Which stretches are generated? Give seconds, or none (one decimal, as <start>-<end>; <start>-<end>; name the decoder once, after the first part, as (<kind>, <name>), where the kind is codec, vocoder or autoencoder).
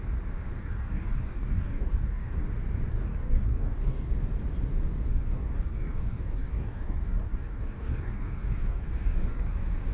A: 0.6-2.4 (codec, DAC); 2.9-4.1; 5.1-9.5